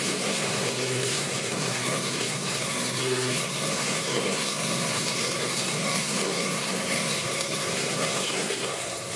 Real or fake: fake